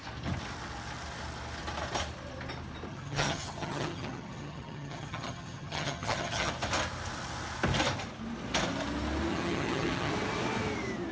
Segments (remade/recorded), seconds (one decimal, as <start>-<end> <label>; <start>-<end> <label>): 0.0-2.9 recorded; 2.9-6.5 remade; 6.5-9.3 recorded; 9.3-10.1 remade; 10.1-11.1 recorded